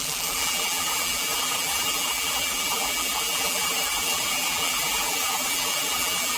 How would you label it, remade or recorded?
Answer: remade